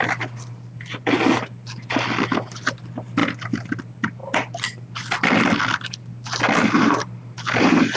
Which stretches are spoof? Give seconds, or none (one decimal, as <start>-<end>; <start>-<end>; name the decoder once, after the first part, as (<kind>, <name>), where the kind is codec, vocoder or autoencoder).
none